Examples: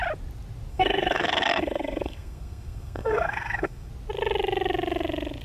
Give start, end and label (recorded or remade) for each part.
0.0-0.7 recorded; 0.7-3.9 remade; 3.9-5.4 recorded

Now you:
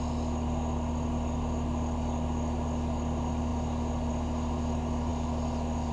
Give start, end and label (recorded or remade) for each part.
0.0-5.9 recorded

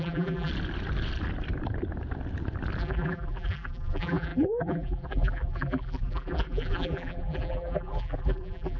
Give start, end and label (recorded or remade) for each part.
0.0-0.5 remade; 0.5-2.8 recorded; 2.8-8.8 remade

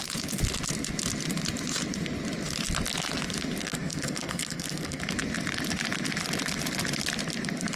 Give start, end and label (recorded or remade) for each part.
0.0-3.6 recorded; 3.6-5.0 remade; 5.0-7.8 recorded